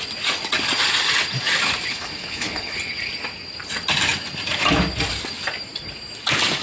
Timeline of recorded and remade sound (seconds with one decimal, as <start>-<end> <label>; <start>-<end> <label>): 0.0-1.9 recorded; 1.9-2.8 remade; 2.8-6.6 recorded